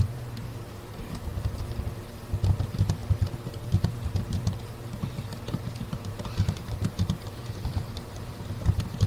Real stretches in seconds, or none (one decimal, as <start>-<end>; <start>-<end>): 1.3-2.6